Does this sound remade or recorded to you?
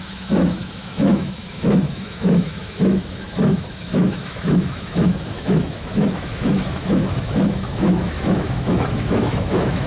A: remade